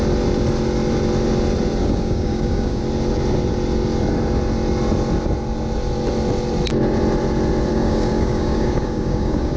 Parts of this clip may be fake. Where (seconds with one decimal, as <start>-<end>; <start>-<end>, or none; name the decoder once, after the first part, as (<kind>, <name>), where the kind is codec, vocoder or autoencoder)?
1.8-2.8 (codec, DAC); 7.7-9.6